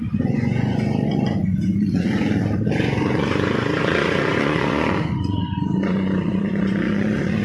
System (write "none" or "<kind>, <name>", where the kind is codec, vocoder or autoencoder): vocoder, Vocos